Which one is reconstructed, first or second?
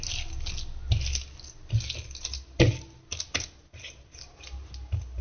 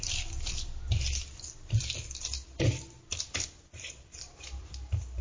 second